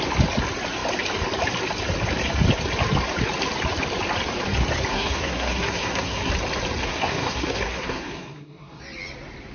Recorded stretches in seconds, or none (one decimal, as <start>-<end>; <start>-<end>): 0.0-4.9; 6.3-6.8; 8.8-9.5